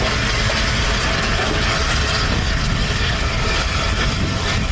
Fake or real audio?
real